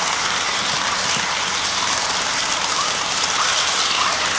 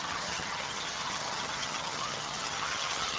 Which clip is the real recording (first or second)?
first